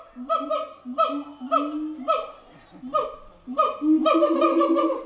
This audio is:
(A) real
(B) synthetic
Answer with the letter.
A